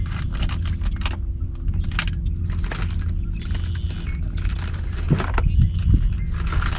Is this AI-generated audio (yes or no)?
no